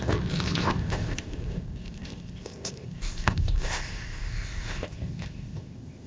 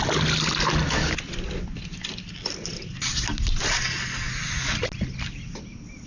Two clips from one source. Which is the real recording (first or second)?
second